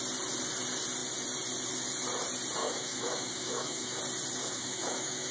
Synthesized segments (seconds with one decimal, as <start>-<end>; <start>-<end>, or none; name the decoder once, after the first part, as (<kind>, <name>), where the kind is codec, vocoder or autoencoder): 2.6-4.0 (autoencoder, DAC-VAE); 4.4-5.3